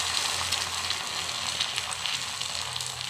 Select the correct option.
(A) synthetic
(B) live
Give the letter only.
B